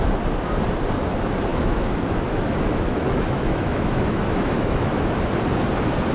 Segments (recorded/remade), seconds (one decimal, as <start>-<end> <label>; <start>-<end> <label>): 0.0-1.5 recorded; 1.5-5.2 remade; 5.2-6.1 recorded